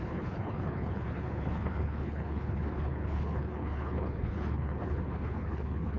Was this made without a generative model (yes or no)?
no